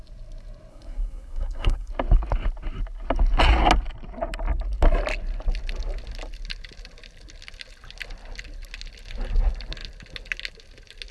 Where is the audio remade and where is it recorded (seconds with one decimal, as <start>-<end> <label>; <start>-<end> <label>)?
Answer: 0.0-0.7 recorded; 0.7-1.9 remade; 1.9-11.1 recorded